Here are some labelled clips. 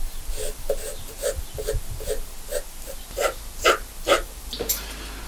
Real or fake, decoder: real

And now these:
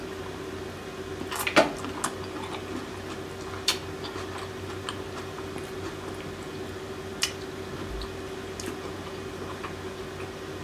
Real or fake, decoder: real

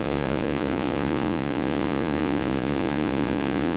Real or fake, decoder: fake, vocoder, Vocos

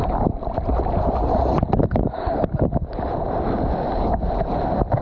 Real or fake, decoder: real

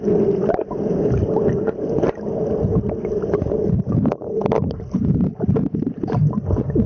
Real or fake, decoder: real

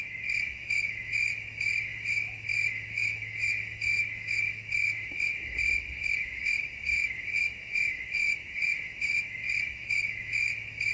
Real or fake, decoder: fake, autoencoder, DAC-VAE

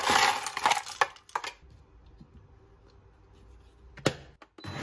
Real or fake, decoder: real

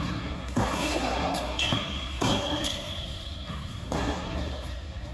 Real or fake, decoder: fake, codec, SNAC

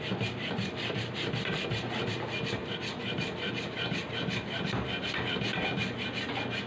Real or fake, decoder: real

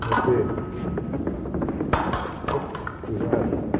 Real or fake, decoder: real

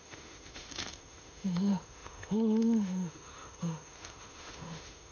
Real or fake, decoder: fake, autoencoder, DAC-VAE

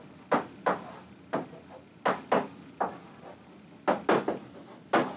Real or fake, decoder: real